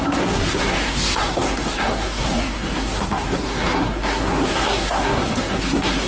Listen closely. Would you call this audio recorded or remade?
remade